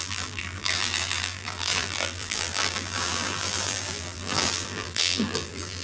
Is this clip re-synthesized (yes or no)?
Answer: yes